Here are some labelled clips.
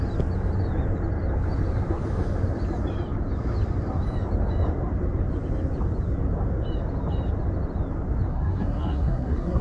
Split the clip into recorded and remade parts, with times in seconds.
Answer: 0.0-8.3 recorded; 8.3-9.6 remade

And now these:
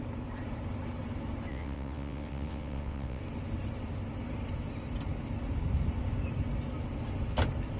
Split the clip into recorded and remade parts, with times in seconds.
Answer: 0.0-1.5 recorded; 1.5-3.2 remade; 3.2-7.8 recorded

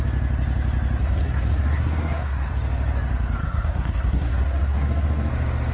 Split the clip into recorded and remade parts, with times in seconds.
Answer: 0.0-1.0 recorded; 1.0-2.5 remade; 2.5-3.4 recorded; 3.4-5.3 remade; 5.3-5.7 recorded

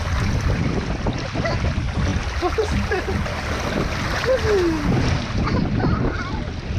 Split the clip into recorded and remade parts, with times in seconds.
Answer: 0.0-6.8 recorded

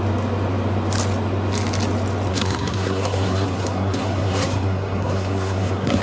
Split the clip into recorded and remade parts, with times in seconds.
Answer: 0.0-2.3 recorded; 2.3-6.0 remade

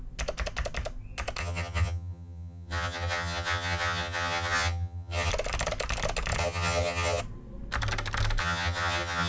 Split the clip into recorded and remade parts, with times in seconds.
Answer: 0.0-1.4 recorded; 1.4-5.3 remade; 5.3-6.4 recorded; 6.4-7.2 remade; 7.2-8.4 recorded; 8.4-9.3 remade